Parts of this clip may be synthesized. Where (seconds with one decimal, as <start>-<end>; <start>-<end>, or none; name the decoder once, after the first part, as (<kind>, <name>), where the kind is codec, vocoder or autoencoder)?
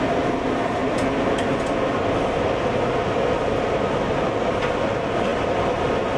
none